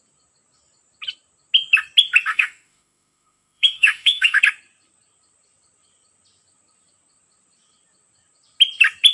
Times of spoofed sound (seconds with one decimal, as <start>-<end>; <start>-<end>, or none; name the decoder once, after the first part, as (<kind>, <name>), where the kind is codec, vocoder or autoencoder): 2.3-4.4 (autoencoder, DAC-VAE)